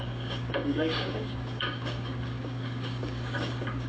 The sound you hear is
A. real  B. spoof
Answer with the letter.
B